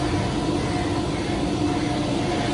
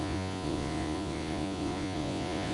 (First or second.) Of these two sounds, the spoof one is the second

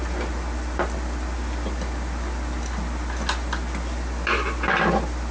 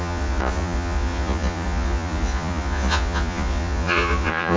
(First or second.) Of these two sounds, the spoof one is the second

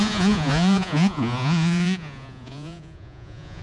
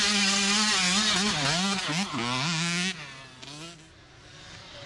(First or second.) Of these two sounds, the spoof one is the first